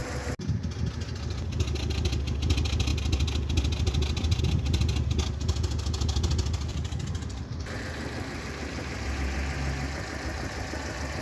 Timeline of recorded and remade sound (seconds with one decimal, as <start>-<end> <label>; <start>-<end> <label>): 0.0-6.7 recorded; 6.7-9.2 remade; 9.2-11.2 recorded